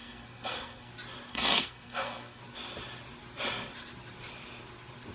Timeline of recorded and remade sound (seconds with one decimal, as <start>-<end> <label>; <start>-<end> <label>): 0.0-0.9 remade; 0.9-1.3 recorded; 1.3-2.4 remade; 2.4-5.1 recorded